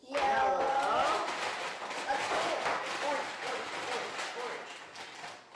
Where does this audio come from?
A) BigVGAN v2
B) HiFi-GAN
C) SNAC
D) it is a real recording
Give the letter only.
D